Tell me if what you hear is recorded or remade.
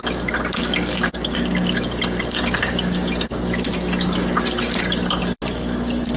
recorded